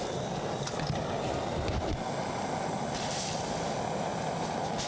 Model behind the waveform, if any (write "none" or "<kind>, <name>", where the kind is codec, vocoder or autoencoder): none